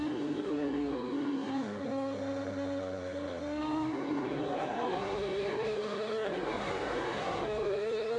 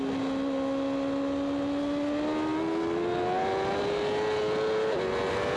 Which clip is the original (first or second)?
second